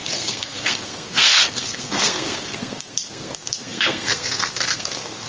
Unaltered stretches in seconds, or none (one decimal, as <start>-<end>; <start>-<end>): none